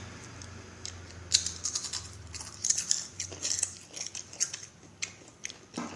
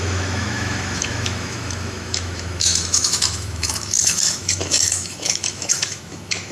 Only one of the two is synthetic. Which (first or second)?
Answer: second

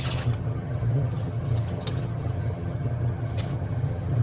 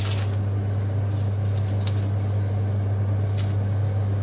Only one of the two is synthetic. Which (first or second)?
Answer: first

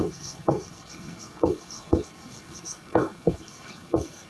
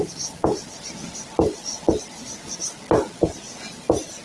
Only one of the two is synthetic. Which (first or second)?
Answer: first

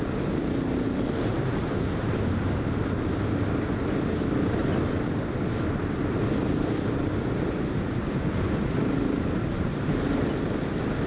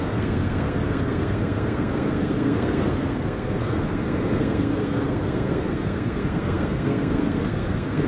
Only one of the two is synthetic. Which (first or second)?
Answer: second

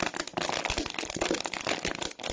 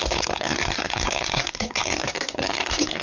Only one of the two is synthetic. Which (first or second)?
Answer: second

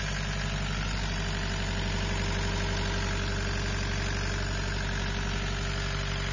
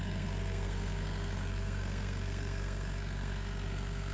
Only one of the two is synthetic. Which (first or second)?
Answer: second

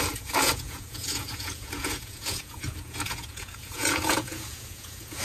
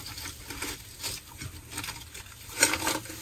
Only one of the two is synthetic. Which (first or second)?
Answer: first